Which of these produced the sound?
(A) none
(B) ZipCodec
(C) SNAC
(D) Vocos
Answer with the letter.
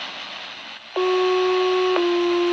A